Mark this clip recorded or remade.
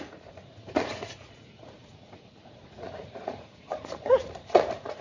remade